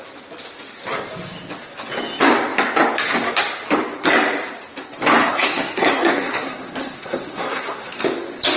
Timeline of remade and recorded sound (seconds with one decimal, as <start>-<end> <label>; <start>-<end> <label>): 0.0-5.2 recorded; 5.2-8.0 remade; 8.0-8.6 recorded